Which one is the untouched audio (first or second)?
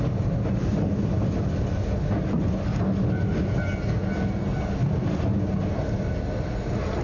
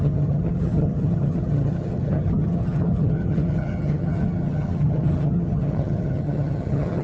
first